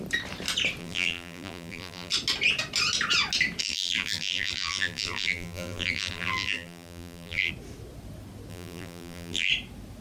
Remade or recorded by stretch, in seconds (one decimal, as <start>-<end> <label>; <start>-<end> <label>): 0.0-0.8 recorded; 0.8-2.1 remade; 2.1-3.6 recorded; 3.6-7.5 remade; 7.5-8.5 recorded; 8.5-9.5 remade; 9.5-10.0 recorded